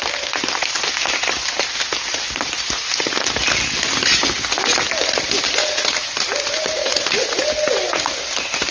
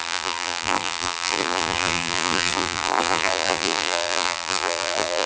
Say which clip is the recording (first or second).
first